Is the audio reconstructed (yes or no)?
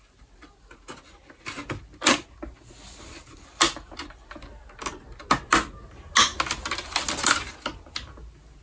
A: no